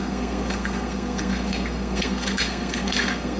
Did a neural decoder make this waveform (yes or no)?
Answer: yes